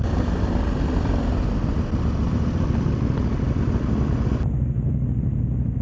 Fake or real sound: real